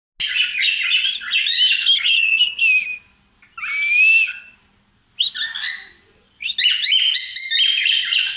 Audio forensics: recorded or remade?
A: recorded